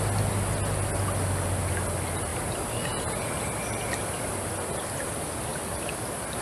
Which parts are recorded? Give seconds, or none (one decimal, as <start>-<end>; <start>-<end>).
0.0-5.5